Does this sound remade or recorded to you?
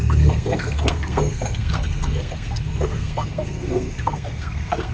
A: remade